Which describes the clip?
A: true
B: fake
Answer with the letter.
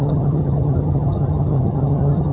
B